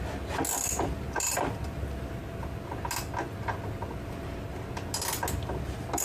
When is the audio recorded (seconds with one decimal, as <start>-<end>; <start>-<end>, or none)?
0.0-6.0